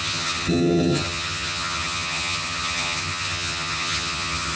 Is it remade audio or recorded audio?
remade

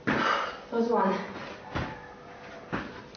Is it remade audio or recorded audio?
recorded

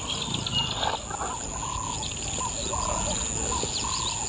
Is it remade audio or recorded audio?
recorded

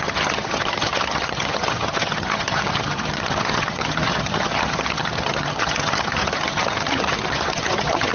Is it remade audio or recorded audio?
remade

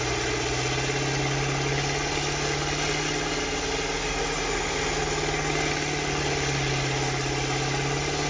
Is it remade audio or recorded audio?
recorded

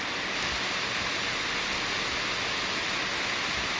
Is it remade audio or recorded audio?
recorded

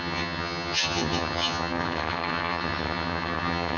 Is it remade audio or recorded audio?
remade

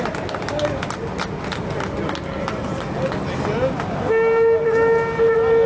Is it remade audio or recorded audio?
recorded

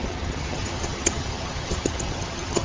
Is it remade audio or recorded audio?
remade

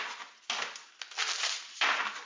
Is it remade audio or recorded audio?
recorded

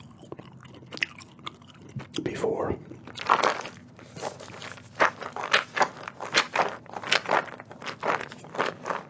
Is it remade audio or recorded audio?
recorded